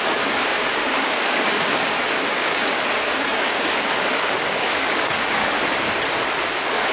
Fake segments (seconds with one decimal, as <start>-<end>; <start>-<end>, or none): 0.0-5.4; 6.4-6.9